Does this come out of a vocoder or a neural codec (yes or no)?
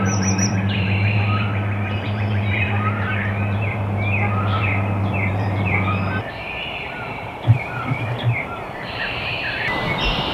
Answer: yes